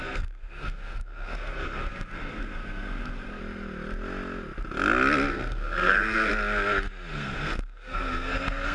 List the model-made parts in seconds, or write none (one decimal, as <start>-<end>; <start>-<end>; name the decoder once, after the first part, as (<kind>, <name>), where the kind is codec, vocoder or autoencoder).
0.0-3.4 (codec, SNAC); 5.3-6.3; 7.1-8.7